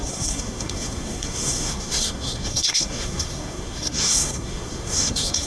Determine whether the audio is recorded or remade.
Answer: remade